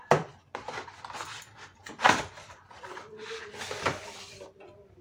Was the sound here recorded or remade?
recorded